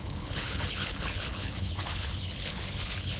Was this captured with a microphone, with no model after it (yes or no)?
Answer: no